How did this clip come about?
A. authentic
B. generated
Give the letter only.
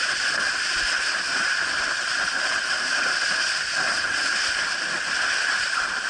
A